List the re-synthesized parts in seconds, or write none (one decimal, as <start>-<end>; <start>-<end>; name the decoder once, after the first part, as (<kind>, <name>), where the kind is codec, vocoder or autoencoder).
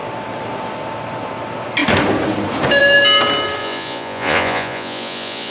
3.6-5.5 (vocoder, Vocos)